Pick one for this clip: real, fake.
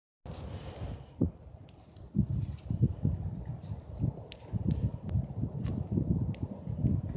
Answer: real